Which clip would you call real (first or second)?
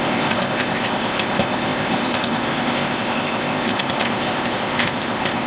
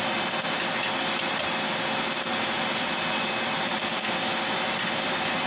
second